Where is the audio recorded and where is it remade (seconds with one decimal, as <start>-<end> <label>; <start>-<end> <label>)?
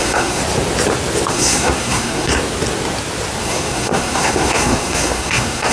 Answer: 0.0-0.4 remade; 0.4-1.3 recorded; 1.3-2.3 remade; 2.3-3.4 recorded; 3.4-5.7 remade